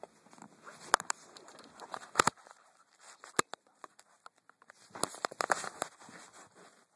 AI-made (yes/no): no